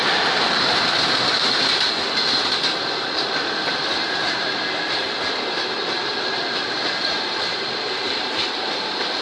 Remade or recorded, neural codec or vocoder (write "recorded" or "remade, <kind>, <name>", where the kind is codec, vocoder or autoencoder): recorded